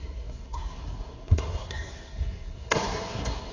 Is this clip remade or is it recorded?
remade